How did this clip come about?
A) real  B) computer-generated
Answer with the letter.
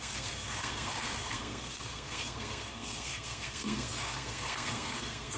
B